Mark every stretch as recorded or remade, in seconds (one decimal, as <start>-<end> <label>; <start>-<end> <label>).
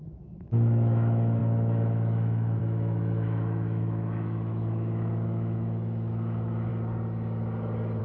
0.0-6.7 remade; 6.7-8.0 recorded